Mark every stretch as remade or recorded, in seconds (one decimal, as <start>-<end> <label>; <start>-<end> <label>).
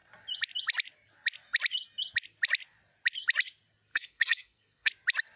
0.0-3.9 recorded; 3.9-4.9 remade; 4.9-5.4 recorded